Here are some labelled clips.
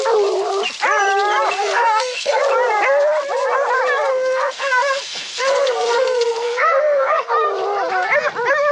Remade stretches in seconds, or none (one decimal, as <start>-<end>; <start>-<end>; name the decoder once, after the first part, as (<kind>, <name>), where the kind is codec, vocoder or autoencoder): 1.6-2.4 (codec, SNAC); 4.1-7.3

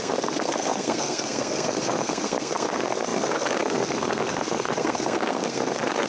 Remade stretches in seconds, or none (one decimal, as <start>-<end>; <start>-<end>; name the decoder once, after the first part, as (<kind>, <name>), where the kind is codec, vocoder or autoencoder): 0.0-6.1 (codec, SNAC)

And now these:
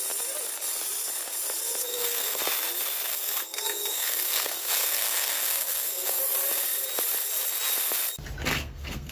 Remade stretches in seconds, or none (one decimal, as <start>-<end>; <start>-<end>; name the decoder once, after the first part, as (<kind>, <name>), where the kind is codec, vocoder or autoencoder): 1.8-2.4 (codec, SNAC); 3.1-6.2; 8.5-9.1

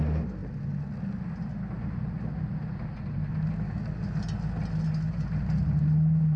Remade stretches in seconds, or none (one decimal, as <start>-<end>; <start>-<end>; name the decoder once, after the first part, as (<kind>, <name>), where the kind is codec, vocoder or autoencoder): none